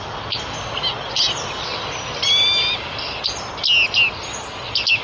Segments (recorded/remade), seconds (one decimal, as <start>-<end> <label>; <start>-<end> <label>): 0.0-5.0 recorded

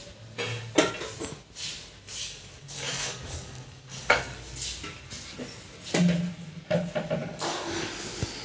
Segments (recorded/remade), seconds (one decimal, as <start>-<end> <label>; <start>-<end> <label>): 0.0-2.2 recorded; 2.2-4.2 remade; 4.2-7.2 recorded; 7.2-7.9 remade; 7.9-8.4 recorded

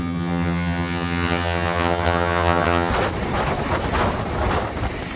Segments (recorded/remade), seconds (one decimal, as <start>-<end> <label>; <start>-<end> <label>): 0.0-2.9 remade; 2.9-5.2 recorded

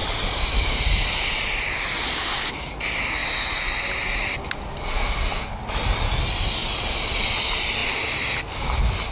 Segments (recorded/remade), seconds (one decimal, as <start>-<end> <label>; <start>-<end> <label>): 0.0-9.1 recorded

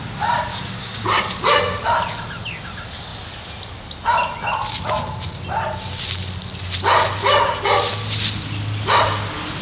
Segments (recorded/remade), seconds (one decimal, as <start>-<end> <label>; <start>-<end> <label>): 0.0-0.5 recorded; 0.5-1.2 remade; 1.2-9.6 recorded

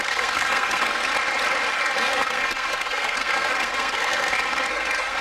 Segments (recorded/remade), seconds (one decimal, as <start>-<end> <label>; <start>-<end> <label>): 0.0-1.1 remade; 1.1-1.7 recorded; 1.7-5.2 remade

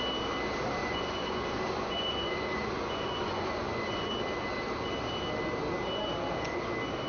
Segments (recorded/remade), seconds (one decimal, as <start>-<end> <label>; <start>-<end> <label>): 0.0-0.8 recorded; 0.8-4.1 remade; 4.1-7.1 recorded

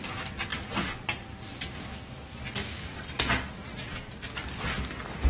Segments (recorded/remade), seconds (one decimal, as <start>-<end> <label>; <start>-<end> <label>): 0.0-5.3 recorded